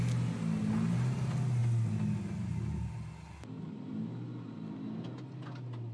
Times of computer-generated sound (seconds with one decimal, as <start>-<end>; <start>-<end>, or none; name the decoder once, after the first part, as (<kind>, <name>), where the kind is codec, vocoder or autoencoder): none

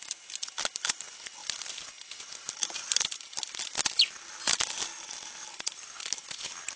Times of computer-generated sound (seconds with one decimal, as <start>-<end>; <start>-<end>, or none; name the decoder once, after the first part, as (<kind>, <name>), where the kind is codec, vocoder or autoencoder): none

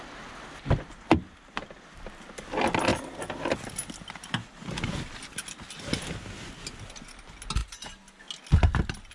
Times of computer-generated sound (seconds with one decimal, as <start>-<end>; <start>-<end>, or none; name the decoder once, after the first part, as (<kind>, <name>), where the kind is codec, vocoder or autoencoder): none

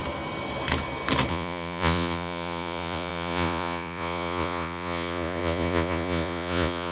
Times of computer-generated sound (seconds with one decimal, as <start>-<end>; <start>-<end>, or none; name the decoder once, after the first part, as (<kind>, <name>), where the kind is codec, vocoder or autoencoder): 1.3-6.9 (vocoder, Vocos)

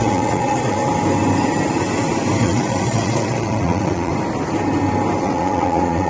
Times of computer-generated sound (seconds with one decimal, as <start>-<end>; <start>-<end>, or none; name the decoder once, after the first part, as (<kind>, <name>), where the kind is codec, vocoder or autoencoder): 0.0-0.8 (vocoder, Vocos); 2.4-4.1; 5.2-6.1

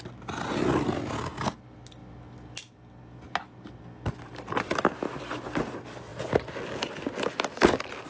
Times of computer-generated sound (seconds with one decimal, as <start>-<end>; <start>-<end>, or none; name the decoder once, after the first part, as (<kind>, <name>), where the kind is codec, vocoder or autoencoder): none